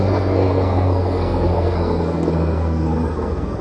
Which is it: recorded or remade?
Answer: remade